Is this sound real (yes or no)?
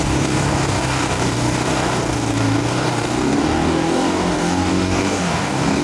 no